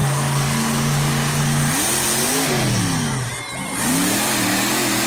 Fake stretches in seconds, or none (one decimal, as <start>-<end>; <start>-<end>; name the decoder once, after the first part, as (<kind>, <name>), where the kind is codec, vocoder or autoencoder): 0.0-1.4 (codec, DAC)

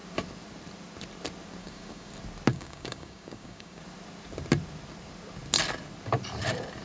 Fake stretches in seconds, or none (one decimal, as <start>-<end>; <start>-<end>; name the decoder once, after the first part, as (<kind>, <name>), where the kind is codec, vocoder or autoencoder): 1.6-2.1 (codec, DAC); 2.5-3.8

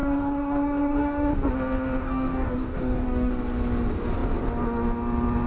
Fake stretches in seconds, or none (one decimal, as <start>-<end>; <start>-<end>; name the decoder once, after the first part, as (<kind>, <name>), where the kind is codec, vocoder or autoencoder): 0.0-1.3 (codec, DAC); 2.0-3.3

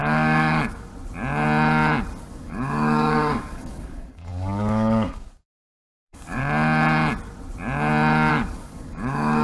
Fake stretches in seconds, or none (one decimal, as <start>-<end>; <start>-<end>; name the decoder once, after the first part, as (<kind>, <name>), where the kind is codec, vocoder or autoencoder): 0.0-0.9 (codec, DAC); 2.3-6.4; 8.3-9.4

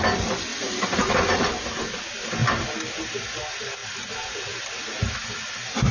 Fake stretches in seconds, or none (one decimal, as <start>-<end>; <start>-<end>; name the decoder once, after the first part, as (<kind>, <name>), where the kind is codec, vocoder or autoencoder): none

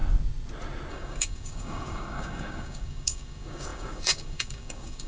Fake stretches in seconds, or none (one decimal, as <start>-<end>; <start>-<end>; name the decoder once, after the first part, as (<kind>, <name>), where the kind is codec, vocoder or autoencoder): 0.9-5.1 (codec, DAC)

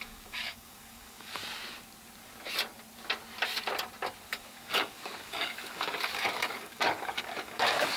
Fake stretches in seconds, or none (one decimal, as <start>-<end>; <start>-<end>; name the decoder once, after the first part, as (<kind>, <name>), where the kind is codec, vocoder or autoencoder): 0.0-1.4 (codec, DAC); 4.3-8.0